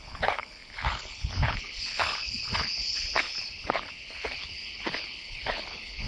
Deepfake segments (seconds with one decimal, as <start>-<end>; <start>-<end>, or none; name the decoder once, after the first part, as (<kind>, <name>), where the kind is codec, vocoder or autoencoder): 0.0-6.1 (codec, HILCodec)